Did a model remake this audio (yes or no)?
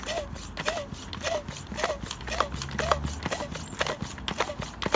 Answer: no